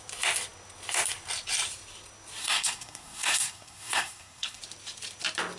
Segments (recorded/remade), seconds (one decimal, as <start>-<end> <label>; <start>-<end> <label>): 0.0-2.4 recorded; 2.4-4.6 remade; 4.6-5.6 recorded